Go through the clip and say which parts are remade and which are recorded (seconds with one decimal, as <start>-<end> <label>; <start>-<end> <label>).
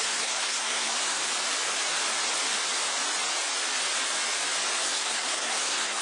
0.0-1.2 remade; 1.2-4.8 recorded; 4.8-6.0 remade